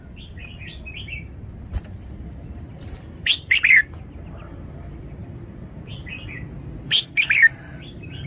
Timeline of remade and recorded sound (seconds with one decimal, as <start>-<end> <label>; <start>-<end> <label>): 0.0-5.2 remade; 5.2-5.9 recorded; 5.9-8.3 remade